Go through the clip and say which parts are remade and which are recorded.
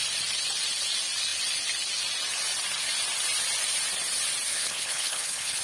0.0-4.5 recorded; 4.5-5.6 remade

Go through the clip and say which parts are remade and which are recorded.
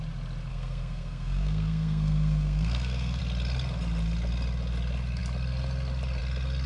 0.0-0.5 recorded; 0.5-3.2 remade; 3.2-6.7 recorded